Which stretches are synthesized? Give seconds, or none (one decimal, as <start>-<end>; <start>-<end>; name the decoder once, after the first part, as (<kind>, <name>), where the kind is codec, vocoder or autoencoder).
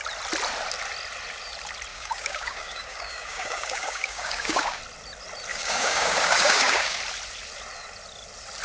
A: 1.9-4.8 (codec, DAC); 5.5-7.0